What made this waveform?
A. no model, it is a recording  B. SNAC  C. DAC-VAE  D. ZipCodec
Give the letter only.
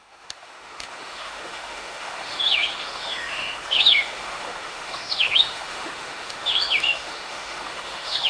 C